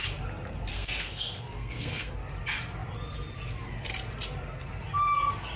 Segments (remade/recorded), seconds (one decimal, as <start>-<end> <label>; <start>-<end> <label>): 0.0-0.7 recorded; 0.7-2.1 remade; 2.1-5.6 recorded